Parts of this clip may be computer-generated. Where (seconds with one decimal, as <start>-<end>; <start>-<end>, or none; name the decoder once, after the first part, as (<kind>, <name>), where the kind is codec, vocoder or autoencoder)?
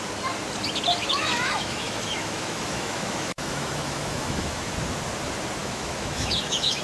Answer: 1.0-4.7 (autoencoder, DAC-VAE); 5.6-6.8